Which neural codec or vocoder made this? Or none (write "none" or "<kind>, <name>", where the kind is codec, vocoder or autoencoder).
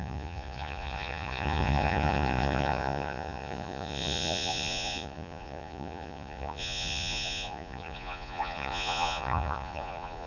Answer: vocoder, Vocos